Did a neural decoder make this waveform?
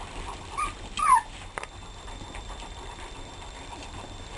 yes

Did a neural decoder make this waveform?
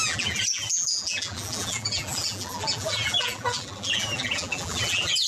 yes